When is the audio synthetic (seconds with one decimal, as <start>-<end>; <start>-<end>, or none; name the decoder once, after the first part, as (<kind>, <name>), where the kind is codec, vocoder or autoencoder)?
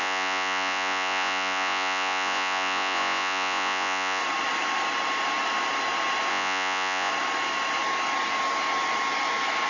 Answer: 0.0-4.2 (vocoder, Vocos); 6.3-7.1